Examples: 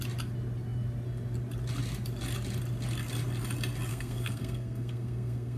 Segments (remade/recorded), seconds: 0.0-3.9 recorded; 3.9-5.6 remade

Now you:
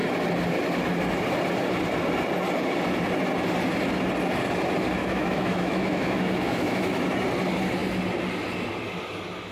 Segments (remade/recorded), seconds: 0.0-5.0 recorded; 5.0-7.0 remade; 7.0-9.5 recorded

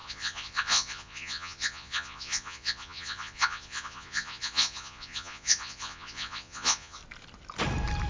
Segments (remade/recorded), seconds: 0.0-7.0 remade; 7.0-8.1 recorded

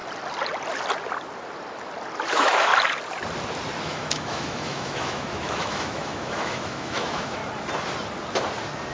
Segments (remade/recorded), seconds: 0.0-2.3 recorded; 2.3-2.7 remade; 2.7-3.8 recorded; 3.8-7.4 remade; 7.4-8.9 recorded